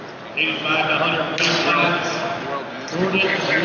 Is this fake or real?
real